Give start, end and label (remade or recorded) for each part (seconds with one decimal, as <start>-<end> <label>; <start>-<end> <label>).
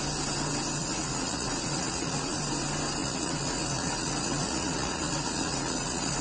0.0-0.8 recorded; 0.8-2.4 remade; 2.4-3.0 recorded; 3.0-6.2 remade